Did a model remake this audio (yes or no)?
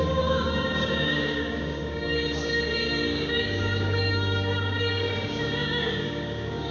yes